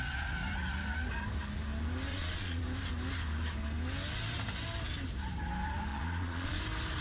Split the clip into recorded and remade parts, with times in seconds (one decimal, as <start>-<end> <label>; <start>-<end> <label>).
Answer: 0.0-2.1 recorded; 2.1-2.6 remade; 2.6-5.9 recorded; 5.9-6.6 remade; 6.6-7.0 recorded